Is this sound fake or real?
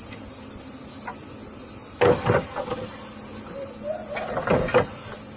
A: real